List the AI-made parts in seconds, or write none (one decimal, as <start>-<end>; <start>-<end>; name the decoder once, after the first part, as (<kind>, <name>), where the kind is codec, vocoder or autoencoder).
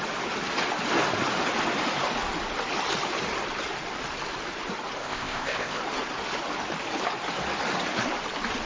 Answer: 5.0-5.8 (codec, ZipCodec)